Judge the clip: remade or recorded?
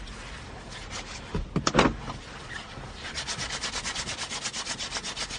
recorded